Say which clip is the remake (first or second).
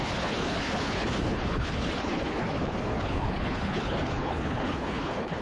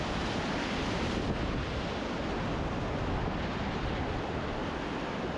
first